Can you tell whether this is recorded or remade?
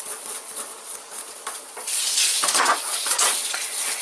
remade